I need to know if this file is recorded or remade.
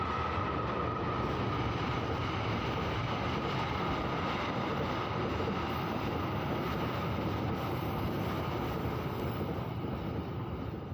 recorded